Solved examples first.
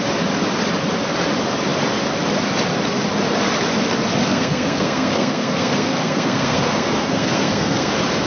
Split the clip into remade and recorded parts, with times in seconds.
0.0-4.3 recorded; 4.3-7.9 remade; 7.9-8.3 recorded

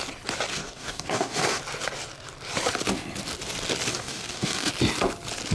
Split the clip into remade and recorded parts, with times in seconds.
0.0-0.5 recorded; 0.5-1.6 remade; 1.6-3.9 recorded; 3.9-4.7 remade; 4.7-5.5 recorded

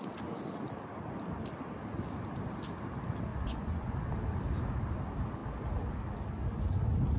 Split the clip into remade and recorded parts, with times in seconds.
0.0-3.3 recorded; 3.3-3.9 remade; 3.9-7.2 recorded

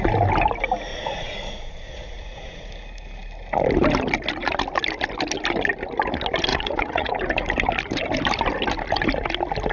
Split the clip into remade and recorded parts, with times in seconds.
0.0-0.9 recorded; 0.9-2.7 remade; 2.7-6.5 recorded; 6.5-7.1 remade; 7.1-9.7 recorded

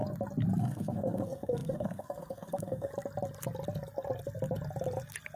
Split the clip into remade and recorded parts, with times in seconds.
0.0-0.6 recorded; 0.6-2.9 remade; 2.9-5.4 recorded